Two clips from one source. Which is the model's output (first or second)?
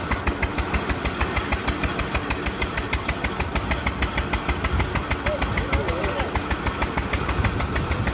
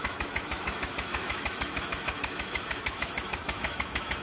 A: second